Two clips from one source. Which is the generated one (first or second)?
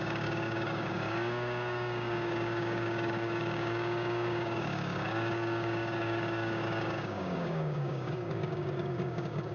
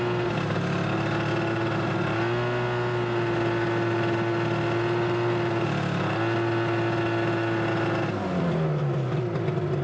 first